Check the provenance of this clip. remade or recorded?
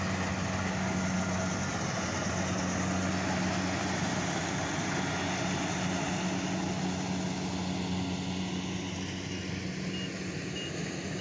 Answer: recorded